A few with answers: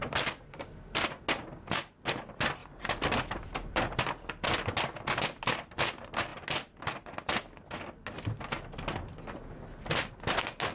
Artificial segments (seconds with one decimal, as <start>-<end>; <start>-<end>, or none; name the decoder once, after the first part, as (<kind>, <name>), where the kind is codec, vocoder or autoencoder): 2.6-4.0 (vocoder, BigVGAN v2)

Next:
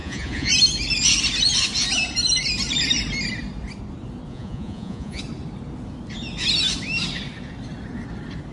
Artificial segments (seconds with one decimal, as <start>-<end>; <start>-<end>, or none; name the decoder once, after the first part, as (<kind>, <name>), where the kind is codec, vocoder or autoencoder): 0.0-0.5 (vocoder, Vocos); 4.3-5.2

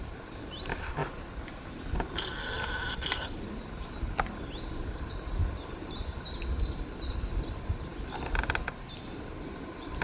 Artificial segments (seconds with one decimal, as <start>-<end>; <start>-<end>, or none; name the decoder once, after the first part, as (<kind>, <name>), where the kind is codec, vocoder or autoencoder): none

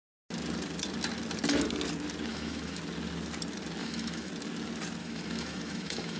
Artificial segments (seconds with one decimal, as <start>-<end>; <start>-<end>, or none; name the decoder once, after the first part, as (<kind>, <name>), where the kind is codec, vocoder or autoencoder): 2.3-2.8 (autoencoder, DAC-VAE); 3.8-4.3; 5.0-6.2

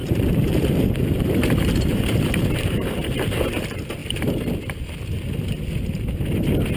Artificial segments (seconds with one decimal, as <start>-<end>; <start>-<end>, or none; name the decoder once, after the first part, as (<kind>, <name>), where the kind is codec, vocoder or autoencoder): 0.0-3.6 (vocoder, BigVGAN v2)

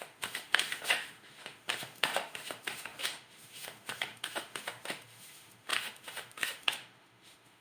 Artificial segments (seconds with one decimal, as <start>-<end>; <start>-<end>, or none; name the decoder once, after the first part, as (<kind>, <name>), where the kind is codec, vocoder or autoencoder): 0.0-7.6 (autoencoder, DAC-VAE)

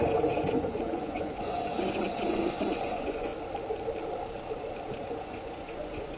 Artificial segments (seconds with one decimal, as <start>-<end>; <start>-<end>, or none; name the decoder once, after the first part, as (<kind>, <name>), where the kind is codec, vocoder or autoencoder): 0.0-3.3 (vocoder, Vocos); 4.9-6.2

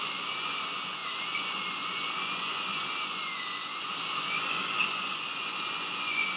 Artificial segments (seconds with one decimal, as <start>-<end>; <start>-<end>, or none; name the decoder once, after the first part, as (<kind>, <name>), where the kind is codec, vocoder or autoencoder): 0.0-6.4 (vocoder, Vocos)